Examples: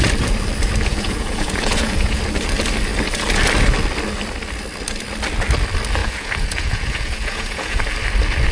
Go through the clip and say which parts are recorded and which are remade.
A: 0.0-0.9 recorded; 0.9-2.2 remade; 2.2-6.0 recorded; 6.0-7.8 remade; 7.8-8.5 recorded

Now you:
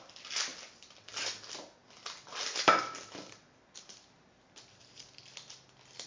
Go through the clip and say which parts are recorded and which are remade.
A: 0.0-6.1 recorded

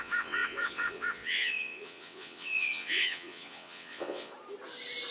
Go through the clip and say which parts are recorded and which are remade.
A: 0.0-4.3 remade; 4.3-5.1 recorded